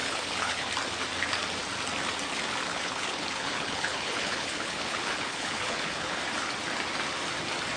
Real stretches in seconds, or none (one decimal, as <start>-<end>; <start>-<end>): 0.7-2.7; 6.2-7.8